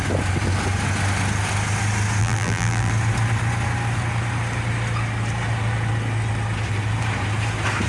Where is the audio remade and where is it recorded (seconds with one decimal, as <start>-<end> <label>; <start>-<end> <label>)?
0.0-2.2 recorded; 2.2-2.9 remade; 2.9-7.9 recorded

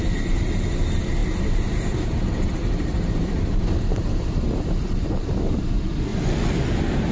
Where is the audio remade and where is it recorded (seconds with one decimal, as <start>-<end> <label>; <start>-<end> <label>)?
0.0-6.1 remade; 6.1-7.1 recorded

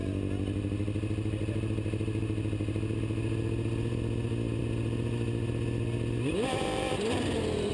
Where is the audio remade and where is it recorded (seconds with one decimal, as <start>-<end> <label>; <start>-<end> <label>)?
0.0-6.5 recorded; 6.5-7.0 remade; 7.0-7.7 recorded

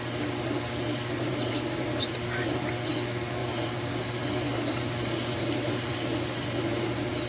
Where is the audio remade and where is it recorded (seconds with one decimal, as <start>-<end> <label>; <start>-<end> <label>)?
0.0-1.3 recorded; 1.3-2.1 remade; 2.1-3.4 recorded; 3.4-4.8 remade; 4.8-7.3 recorded

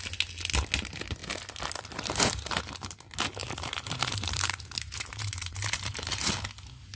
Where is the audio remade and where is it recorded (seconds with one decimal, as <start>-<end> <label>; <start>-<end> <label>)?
0.0-3.4 recorded; 3.4-6.2 remade; 6.2-7.0 recorded

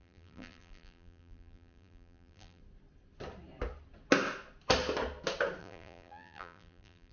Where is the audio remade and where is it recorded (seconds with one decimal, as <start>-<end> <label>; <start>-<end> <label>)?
0.0-2.6 remade; 2.6-5.6 recorded; 5.6-7.1 remade

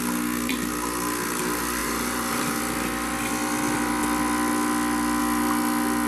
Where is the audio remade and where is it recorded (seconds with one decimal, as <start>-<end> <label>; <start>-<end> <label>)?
0.0-1.8 recorded; 1.8-2.6 remade; 2.6-6.1 recorded

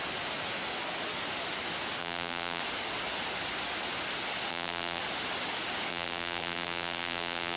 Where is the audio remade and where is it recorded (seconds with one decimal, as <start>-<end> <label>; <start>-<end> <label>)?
0.0-2.0 recorded; 2.0-2.6 remade; 2.6-4.5 recorded; 4.5-5.0 remade; 5.0-5.9 recorded; 5.9-7.6 remade